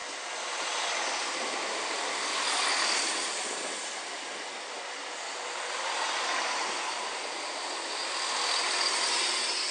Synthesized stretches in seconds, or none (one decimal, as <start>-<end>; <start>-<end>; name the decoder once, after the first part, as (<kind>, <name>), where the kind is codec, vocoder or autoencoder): none